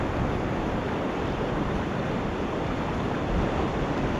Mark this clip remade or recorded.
remade